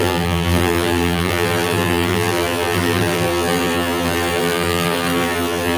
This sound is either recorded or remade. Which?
remade